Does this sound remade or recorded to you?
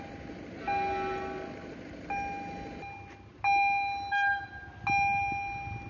recorded